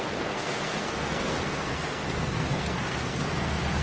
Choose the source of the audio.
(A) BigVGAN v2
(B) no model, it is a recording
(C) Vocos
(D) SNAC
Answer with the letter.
D